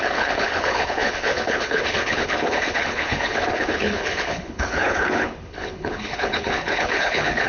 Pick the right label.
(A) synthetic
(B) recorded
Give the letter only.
A